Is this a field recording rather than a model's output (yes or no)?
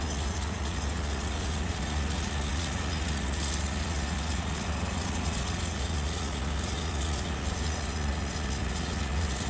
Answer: no